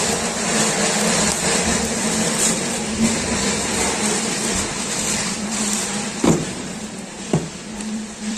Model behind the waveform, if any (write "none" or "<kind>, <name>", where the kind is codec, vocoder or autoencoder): vocoder, BigVGAN v2